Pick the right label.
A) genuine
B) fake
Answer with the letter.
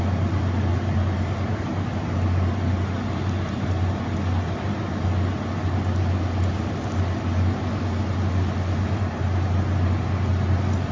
A